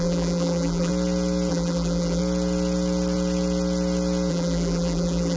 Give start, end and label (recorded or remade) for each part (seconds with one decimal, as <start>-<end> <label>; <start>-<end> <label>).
0.0-0.9 remade; 0.9-1.5 recorded; 1.5-2.2 remade; 2.2-4.3 recorded; 4.3-5.4 remade